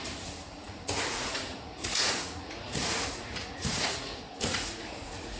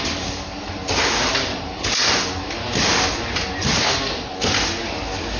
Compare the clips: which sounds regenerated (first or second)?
first